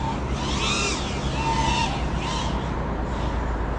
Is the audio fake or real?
real